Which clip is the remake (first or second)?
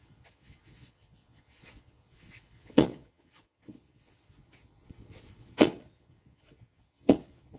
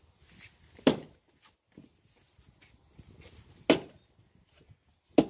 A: first